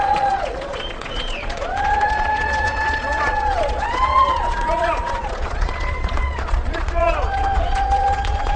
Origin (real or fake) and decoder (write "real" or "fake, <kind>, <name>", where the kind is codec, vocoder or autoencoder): fake, vocoder, Vocos